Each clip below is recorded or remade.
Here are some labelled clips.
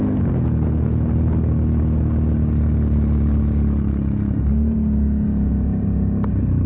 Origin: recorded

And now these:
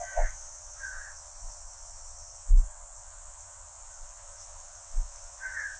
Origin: remade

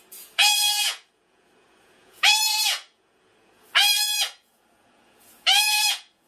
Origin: remade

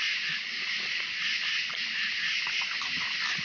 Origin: recorded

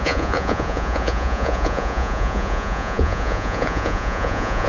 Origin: remade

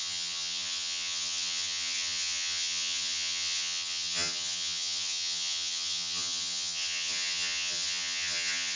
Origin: remade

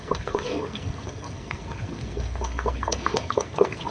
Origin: remade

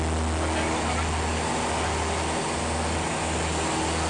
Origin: recorded